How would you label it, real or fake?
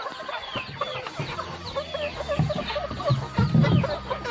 real